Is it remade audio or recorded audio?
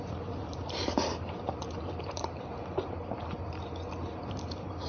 remade